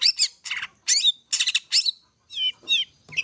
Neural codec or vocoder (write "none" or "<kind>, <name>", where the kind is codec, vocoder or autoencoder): none